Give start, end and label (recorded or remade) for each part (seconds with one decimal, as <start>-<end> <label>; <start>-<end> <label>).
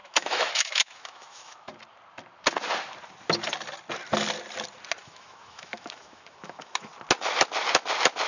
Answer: 0.0-1.7 remade; 1.7-5.0 recorded; 5.0-6.9 remade; 6.9-8.3 recorded